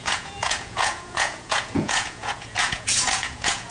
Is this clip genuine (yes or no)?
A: no